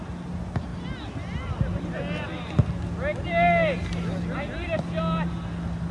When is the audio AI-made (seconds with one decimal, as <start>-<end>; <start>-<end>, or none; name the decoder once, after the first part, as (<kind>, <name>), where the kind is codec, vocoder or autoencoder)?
none